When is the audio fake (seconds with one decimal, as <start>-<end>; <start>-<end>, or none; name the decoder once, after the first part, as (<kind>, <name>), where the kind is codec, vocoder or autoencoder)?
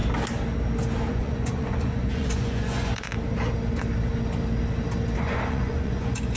1.1-3.1 (vocoder, Vocos); 5.2-6.4